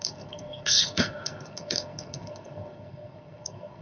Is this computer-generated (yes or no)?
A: yes